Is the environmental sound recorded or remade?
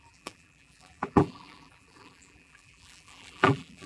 remade